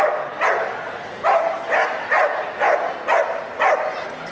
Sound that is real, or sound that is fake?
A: real